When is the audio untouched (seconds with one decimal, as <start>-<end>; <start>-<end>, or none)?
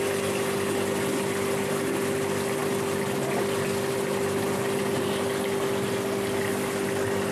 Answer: 0.0-7.3